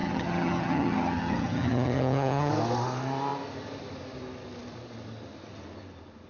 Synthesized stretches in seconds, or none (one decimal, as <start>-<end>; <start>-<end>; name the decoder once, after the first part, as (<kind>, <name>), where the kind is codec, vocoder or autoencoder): 0.0-2.5 (vocoder, HiFi-GAN)